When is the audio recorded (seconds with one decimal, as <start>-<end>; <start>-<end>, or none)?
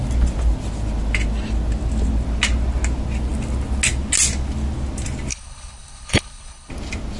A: 0.0-5.3; 6.7-7.2